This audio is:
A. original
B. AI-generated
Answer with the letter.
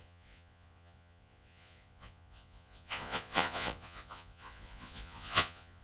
B